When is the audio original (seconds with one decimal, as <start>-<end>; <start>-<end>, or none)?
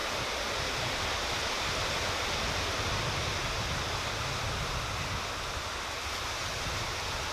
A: 0.0-7.3